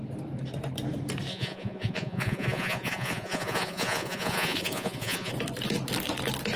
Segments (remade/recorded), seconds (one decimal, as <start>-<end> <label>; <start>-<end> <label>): 0.0-1.3 recorded; 1.3-5.3 remade; 5.3-6.6 recorded